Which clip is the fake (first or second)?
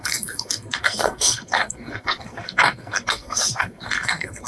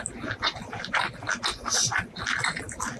first